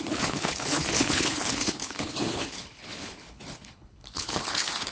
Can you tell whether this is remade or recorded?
remade